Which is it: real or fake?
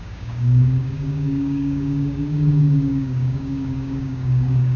fake